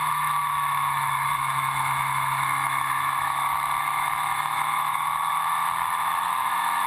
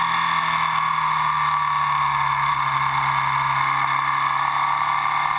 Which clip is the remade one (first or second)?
first